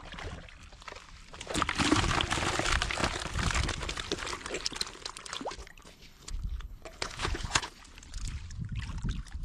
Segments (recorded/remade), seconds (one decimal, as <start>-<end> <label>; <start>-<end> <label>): 0.0-5.6 recorded; 5.6-7.8 remade; 7.8-9.4 recorded